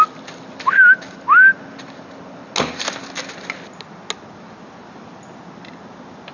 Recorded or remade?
recorded